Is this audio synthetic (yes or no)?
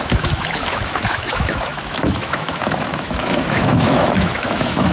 yes